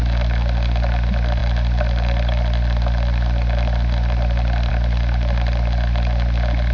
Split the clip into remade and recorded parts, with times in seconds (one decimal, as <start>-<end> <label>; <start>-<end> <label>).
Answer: 0.0-1.4 recorded; 1.4-4.7 remade; 4.7-6.7 recorded